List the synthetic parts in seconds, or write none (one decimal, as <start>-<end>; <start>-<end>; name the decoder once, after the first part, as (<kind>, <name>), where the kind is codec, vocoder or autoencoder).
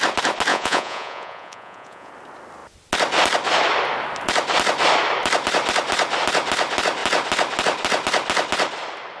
0.5-2.1 (vocoder, Vocos)